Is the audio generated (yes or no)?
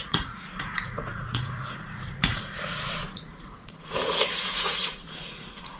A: yes